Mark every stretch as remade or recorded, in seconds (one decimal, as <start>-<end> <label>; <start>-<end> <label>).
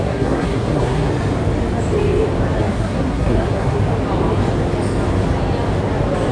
0.0-1.1 remade; 1.1-2.6 recorded; 2.6-3.8 remade; 3.8-6.3 recorded